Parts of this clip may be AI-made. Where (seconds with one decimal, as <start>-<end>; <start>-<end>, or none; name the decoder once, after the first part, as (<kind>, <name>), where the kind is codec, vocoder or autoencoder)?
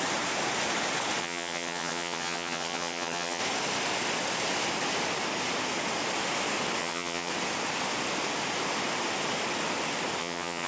1.2-3.4 (vocoder, HiFi-GAN); 6.8-7.3; 10.2-10.7